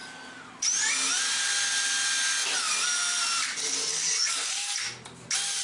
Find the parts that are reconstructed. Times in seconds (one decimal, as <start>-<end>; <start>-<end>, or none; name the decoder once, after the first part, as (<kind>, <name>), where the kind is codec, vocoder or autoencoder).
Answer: 3.9-4.8 (codec, DAC)